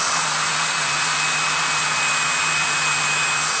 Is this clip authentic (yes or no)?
yes